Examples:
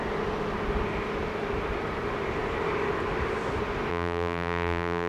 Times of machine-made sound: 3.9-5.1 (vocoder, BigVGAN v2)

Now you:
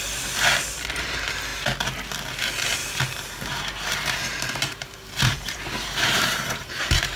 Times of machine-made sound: 2.8-7.2 (vocoder, BigVGAN v2)

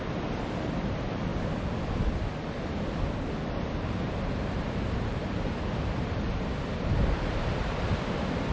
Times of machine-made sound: 0.0-1.3 (vocoder, BigVGAN v2); 3.8-8.5

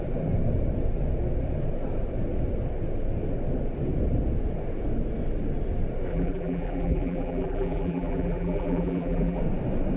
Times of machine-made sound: 6.1-9.4 (vocoder, BigVGAN v2)